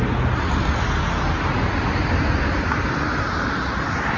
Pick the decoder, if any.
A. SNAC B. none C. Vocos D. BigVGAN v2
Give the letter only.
B